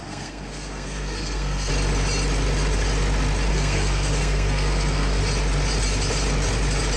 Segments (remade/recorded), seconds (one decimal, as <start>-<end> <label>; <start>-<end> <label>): 0.0-1.7 remade; 1.7-3.5 recorded; 3.5-5.2 remade; 5.2-7.0 recorded